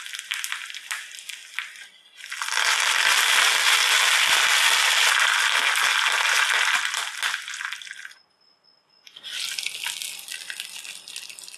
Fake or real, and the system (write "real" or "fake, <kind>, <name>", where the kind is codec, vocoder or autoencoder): real